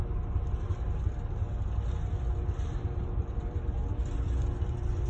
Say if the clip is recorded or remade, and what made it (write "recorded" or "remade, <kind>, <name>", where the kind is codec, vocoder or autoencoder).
recorded